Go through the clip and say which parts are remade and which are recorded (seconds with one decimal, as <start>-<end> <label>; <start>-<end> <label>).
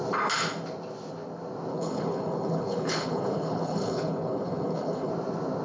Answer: 0.0-1.7 recorded; 1.7-5.1 remade; 5.1-5.6 recorded